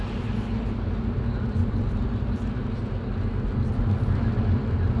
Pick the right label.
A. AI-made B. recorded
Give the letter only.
B